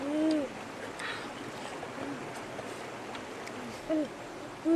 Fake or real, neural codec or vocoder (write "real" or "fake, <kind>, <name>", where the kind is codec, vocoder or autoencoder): real